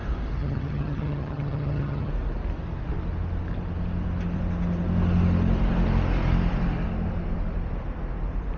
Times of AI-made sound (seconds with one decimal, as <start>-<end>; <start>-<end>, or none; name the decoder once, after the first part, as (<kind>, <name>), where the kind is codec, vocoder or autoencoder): 0.4-2.1 (vocoder, HiFi-GAN)